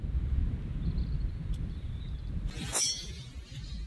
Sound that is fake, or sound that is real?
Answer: real